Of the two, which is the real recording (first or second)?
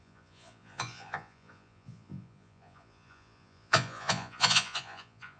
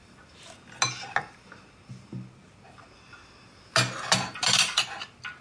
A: second